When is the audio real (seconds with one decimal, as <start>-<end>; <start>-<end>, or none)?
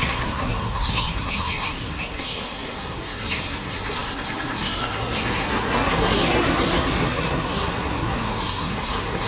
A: none